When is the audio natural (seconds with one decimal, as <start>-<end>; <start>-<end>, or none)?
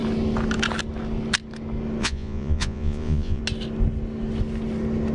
0.0-2.0; 3.4-5.1